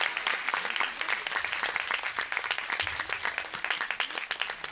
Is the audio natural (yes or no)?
yes